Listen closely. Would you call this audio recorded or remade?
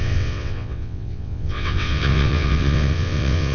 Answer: remade